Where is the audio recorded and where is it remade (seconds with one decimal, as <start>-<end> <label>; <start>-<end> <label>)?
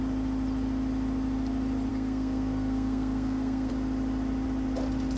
0.0-1.9 recorded; 1.9-3.7 remade; 3.7-5.2 recorded